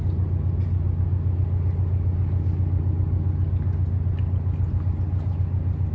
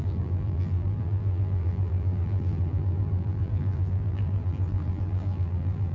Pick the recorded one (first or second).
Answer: first